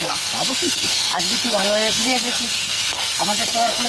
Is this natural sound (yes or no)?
no